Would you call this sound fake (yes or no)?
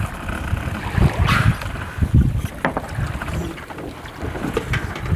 no